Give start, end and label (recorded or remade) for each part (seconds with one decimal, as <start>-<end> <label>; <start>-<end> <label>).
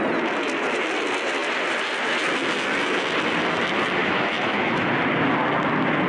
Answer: 0.0-4.0 recorded; 4.0-4.9 remade; 4.9-6.1 recorded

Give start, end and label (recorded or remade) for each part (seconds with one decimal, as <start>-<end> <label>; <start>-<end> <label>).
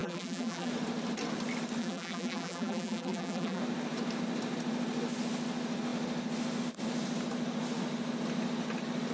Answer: 0.0-0.7 remade; 0.7-1.8 recorded; 1.8-3.6 remade; 3.6-9.1 recorded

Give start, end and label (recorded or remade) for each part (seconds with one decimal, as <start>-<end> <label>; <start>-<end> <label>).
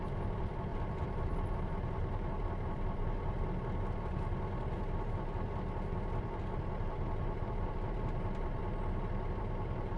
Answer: 0.0-0.7 remade; 0.7-1.6 recorded; 1.6-3.2 remade; 3.2-6.2 recorded; 6.2-8.6 remade; 8.6-9.4 recorded; 9.4-10.0 remade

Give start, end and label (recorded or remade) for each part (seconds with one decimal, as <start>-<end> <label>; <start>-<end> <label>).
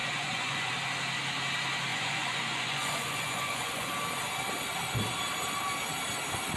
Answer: 0.0-0.7 remade; 0.7-1.9 recorded; 1.9-3.9 remade; 3.9-6.6 recorded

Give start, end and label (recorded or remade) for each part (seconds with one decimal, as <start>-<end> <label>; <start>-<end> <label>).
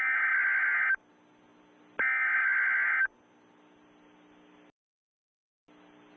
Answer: 0.0-6.2 recorded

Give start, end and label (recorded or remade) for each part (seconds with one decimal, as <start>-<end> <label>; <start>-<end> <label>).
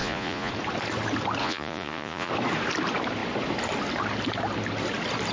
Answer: 0.0-0.5 remade; 0.5-1.4 recorded; 1.4-2.3 remade; 2.3-5.3 recorded